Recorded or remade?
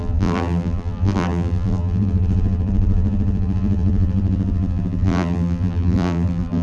remade